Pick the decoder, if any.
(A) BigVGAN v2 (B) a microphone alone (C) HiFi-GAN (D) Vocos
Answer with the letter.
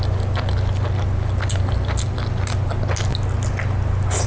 B